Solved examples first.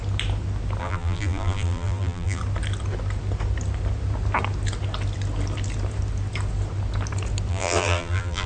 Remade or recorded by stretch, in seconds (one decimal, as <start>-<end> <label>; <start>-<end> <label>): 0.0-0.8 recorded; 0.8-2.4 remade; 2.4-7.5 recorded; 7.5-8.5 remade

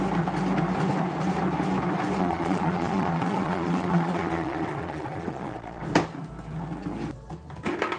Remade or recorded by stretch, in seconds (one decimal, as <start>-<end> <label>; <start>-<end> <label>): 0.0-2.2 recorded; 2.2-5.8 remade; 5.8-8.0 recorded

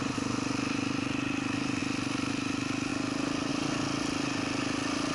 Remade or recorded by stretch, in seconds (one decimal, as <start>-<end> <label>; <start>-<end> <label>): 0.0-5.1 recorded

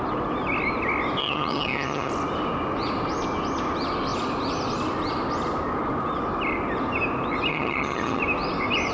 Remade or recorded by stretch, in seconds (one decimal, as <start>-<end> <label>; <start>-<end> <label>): 0.0-1.2 recorded; 1.2-2.1 remade; 2.1-7.5 recorded; 7.5-8.2 remade; 8.2-8.9 recorded

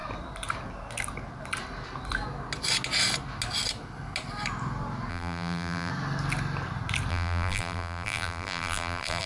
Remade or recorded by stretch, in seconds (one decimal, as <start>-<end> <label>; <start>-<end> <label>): 0.0-5.1 recorded; 5.1-5.9 remade; 5.9-7.1 recorded; 7.1-9.3 remade